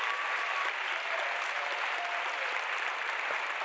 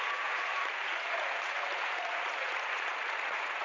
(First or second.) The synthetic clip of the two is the second